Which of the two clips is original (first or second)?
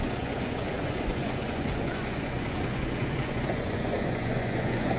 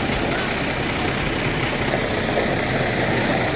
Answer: second